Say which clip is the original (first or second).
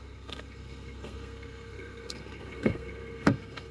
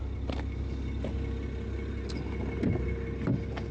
second